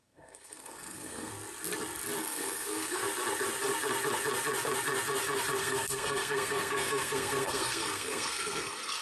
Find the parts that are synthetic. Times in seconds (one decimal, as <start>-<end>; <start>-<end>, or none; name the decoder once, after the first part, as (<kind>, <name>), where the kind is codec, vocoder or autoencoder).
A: 0.0-1.3 (codec, SNAC); 2.2-3.0; 5.6-9.0